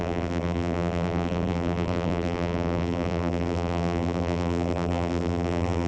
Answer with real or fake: fake